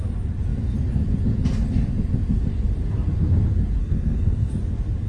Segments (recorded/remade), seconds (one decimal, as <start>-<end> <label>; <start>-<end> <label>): 0.0-3.8 recorded; 3.8-4.5 remade; 4.5-5.1 recorded